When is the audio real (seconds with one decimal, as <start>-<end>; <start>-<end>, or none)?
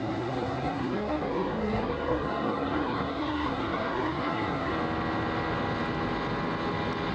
4.7-7.1